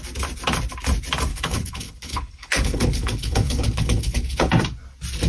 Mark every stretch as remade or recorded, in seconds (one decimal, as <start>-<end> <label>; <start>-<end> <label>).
0.0-1.3 recorded; 1.3-4.5 remade; 4.5-5.3 recorded